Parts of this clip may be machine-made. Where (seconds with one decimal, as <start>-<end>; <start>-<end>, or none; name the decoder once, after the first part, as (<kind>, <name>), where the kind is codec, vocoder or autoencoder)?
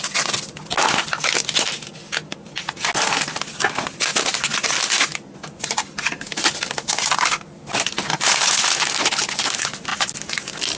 none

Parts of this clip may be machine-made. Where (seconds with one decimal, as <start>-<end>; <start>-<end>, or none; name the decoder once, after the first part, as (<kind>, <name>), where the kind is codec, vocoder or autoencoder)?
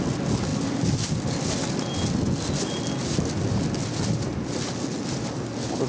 none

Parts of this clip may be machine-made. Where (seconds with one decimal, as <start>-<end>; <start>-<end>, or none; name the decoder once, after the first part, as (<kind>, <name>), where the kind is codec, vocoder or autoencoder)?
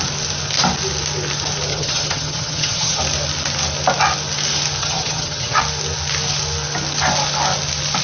1.7-3.0 (vocoder, HiFi-GAN); 4.8-5.6